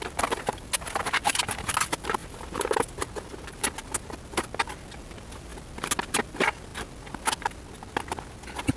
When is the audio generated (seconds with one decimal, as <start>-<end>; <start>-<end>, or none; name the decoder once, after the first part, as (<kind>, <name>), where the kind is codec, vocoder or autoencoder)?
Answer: 2.2-2.8 (vocoder, BigVGAN v2)

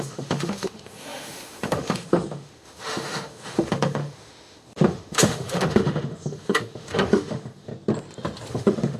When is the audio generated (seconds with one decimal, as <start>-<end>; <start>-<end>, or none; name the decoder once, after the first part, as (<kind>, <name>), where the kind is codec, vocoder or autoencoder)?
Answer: 0.0-7.7 (autoencoder, DAC-VAE); 8.5-9.0